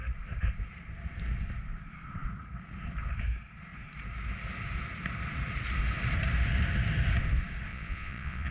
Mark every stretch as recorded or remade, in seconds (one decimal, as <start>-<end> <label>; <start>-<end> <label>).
0.0-7.7 recorded; 7.7-8.5 remade